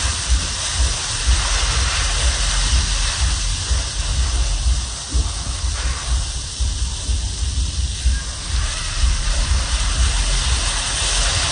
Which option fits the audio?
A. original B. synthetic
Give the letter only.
A